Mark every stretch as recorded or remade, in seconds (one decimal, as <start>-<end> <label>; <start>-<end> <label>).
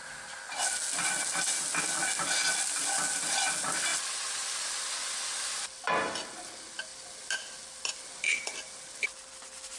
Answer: 0.0-9.8 recorded